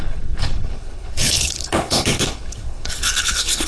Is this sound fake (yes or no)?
yes